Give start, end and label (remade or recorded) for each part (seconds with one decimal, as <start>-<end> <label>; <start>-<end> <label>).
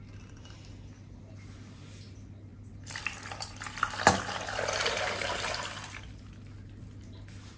0.0-7.6 recorded